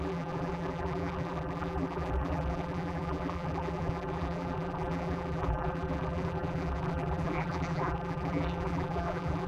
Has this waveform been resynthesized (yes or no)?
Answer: yes